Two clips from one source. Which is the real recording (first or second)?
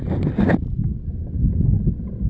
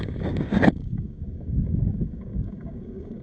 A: first